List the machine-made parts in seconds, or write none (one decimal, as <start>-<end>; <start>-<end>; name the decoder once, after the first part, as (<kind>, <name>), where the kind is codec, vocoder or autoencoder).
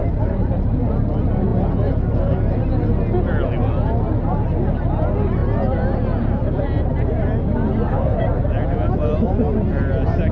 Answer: none